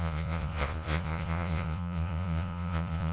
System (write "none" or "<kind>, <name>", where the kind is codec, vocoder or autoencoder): vocoder, Vocos